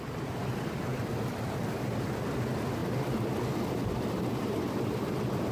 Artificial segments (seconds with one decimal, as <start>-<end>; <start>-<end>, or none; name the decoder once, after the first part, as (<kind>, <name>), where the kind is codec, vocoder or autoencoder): 4.3-5.5 (vocoder, BigVGAN v2)